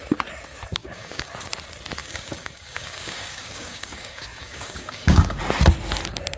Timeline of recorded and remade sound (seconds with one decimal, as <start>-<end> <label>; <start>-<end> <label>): 0.0-0.8 recorded; 0.8-1.3 remade; 1.3-2.0 recorded; 2.0-5.4 remade; 5.4-6.4 recorded